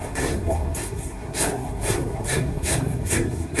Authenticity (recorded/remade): remade